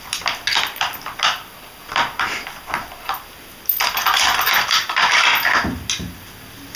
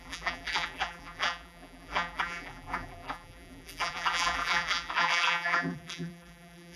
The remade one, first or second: second